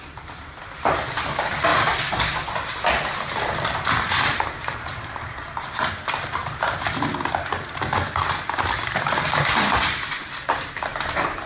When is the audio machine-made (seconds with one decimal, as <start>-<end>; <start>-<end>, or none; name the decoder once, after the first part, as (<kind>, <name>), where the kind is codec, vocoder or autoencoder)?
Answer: 0.0-6.4 (vocoder, BigVGAN v2); 8.8-11.5